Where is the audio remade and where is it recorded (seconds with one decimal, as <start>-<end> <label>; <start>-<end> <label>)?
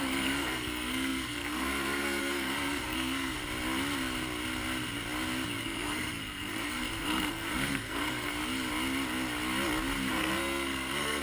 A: 0.0-3.4 remade; 3.4-5.6 recorded; 5.6-8.3 remade; 8.3-10.1 recorded; 10.1-11.2 remade